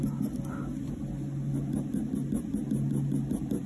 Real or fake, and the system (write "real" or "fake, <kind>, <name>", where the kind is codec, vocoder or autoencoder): real